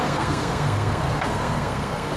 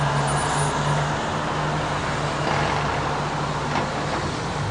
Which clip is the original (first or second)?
second